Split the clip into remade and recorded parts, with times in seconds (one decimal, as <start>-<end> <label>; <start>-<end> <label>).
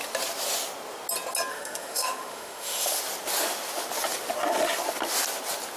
0.0-1.5 recorded; 1.5-3.0 remade; 3.0-5.8 recorded